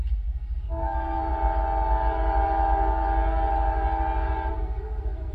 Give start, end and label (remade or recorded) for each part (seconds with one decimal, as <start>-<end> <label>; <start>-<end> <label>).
0.0-1.3 remade; 1.3-4.5 recorded; 4.5-5.3 remade